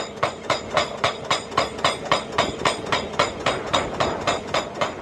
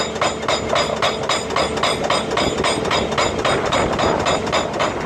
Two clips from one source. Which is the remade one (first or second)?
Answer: first